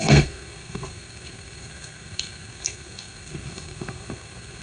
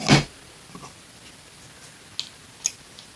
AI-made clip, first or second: first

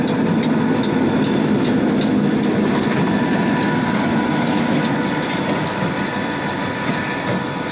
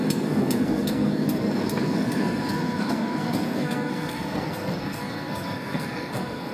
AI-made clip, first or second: second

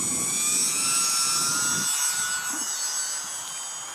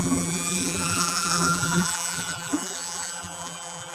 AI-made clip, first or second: second